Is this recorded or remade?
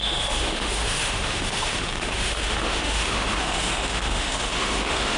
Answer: remade